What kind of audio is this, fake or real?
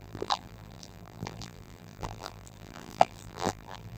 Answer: fake